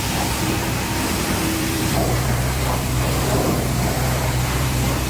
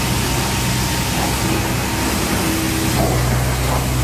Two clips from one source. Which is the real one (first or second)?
second